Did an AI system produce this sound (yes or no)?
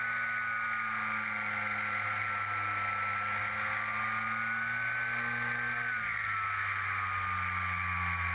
no